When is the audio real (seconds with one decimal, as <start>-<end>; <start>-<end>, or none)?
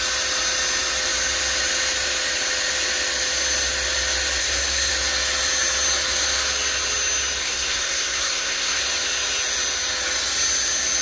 0.0-4.4; 4.9-7.4; 8.8-11.0